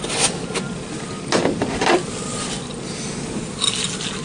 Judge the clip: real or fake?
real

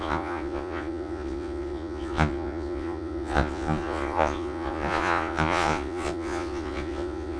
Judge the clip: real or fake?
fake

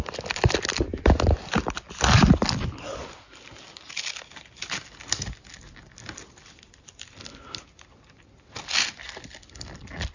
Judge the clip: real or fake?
real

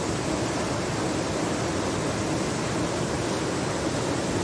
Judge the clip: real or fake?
real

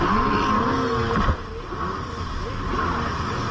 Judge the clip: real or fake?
real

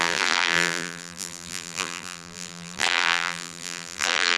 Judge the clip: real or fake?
fake